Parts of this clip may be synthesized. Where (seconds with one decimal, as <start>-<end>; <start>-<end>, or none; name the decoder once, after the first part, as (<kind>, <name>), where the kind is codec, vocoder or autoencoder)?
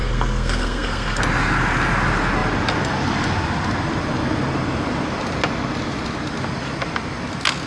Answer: 0.0-1.2 (codec, SNAC)